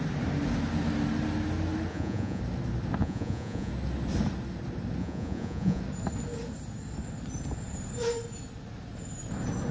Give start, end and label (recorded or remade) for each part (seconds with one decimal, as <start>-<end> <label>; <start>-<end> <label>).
0.0-1.9 recorded; 1.9-2.4 remade; 2.4-3.0 recorded; 3.0-3.7 remade; 3.7-5.0 recorded; 5.0-5.8 remade; 5.8-9.7 recorded